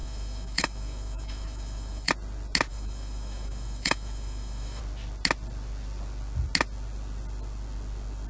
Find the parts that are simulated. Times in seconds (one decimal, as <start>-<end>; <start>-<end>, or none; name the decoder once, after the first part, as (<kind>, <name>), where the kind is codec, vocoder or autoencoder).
0.0-2.1 (autoencoder, DAC-VAE); 2.7-4.8